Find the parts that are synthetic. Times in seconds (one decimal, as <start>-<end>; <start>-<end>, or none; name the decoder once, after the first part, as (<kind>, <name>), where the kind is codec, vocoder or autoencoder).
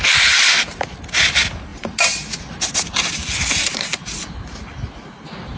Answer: 1.7-2.4 (vocoder, BigVGAN v2); 3.6-4.1